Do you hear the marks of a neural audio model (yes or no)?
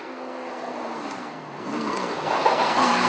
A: yes